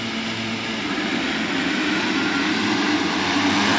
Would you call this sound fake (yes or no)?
no